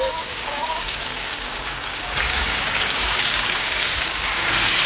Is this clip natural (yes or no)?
no